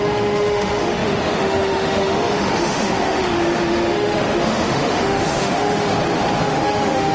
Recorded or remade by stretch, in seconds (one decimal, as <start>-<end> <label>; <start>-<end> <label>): 0.0-5.9 remade; 5.9-6.4 recorded; 6.4-7.1 remade